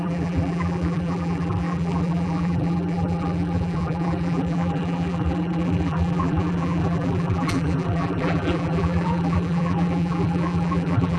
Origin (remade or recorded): remade